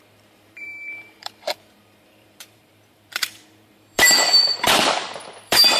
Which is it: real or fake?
fake